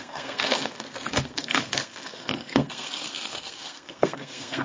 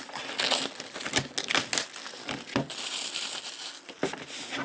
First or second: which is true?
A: second